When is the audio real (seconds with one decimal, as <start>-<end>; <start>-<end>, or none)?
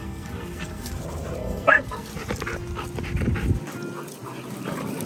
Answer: 0.9-1.4; 2.1-5.1